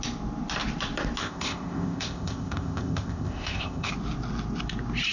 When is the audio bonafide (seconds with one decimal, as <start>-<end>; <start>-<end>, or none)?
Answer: 0.0-1.2; 3.9-5.1